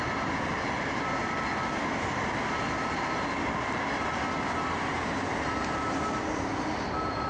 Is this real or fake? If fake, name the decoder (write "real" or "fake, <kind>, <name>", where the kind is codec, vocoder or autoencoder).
real